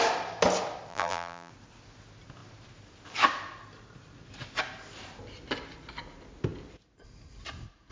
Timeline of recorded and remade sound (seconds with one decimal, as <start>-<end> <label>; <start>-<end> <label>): 0.0-0.9 recorded; 0.9-1.5 remade; 1.5-7.9 recorded